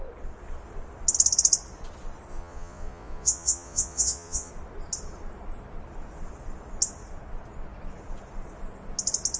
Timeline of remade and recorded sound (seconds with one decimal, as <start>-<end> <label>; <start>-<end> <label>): 0.0-2.3 recorded; 2.3-4.5 remade; 4.5-9.4 recorded